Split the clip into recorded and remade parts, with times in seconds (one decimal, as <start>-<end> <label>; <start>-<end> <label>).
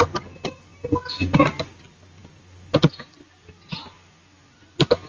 0.0-5.1 recorded